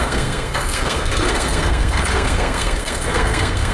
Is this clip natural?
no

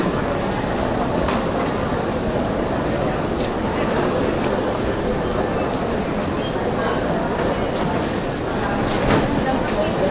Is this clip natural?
yes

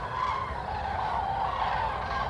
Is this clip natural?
yes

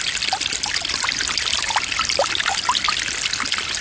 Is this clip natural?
yes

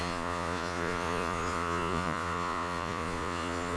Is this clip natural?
no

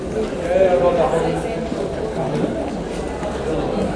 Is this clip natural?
yes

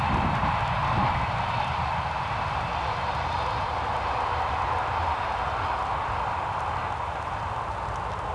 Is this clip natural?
yes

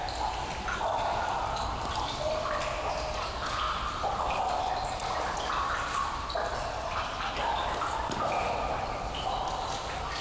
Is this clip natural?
yes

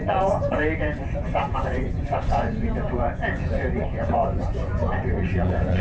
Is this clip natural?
no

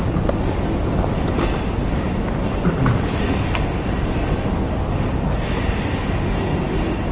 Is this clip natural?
yes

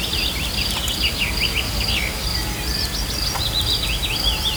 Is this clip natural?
yes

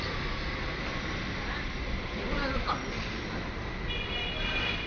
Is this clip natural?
yes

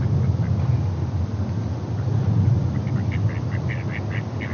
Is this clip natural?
yes